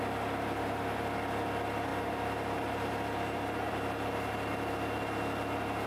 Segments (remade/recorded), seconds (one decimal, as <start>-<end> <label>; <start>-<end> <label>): 0.0-1.9 recorded; 1.9-3.7 remade; 3.7-5.9 recorded